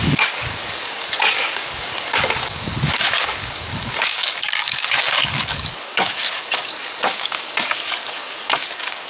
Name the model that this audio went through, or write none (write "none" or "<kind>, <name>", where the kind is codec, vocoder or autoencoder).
codec, DAC